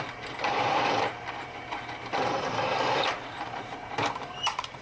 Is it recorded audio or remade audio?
remade